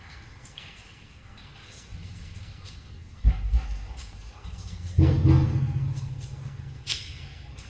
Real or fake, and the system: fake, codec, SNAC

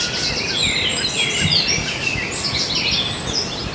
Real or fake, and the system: real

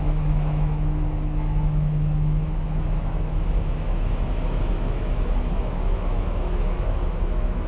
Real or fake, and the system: fake, autoencoder, DAC-VAE